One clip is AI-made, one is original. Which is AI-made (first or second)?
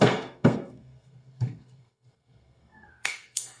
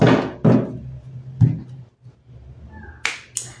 first